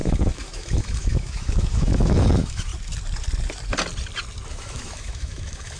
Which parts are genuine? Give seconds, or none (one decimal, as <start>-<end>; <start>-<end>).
2.7-4.5